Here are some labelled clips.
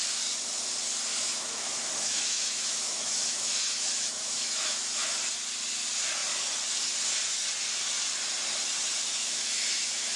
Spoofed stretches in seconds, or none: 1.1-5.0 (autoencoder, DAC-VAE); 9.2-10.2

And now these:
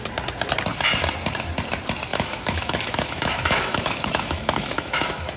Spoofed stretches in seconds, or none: 2.1-5.4 (autoencoder, DAC-VAE)